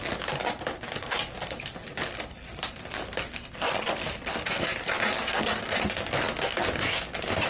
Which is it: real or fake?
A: real